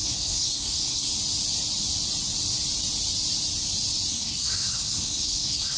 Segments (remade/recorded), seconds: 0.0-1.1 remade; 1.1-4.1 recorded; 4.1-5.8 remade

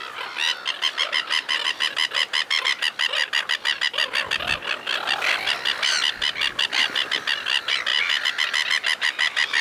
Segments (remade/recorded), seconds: 0.0-9.6 recorded